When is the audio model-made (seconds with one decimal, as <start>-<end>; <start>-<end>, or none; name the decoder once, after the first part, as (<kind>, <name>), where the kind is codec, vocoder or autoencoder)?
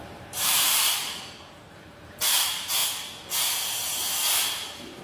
0.0-1.0 (vocoder, BigVGAN v2); 1.7-2.8